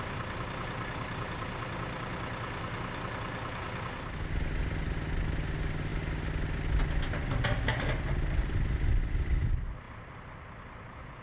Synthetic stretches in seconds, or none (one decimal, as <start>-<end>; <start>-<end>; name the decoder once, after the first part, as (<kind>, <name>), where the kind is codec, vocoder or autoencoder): none